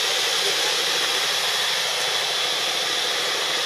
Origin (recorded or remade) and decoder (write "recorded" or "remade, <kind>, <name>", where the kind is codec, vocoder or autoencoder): recorded